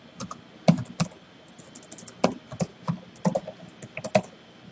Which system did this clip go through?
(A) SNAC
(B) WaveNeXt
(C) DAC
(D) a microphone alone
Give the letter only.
D